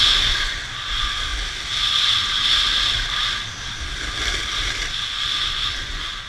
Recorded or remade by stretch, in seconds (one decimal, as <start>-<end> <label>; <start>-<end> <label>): 0.0-1.3 remade; 1.3-5.1 recorded; 5.1-6.3 remade